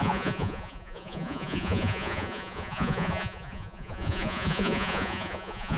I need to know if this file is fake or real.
fake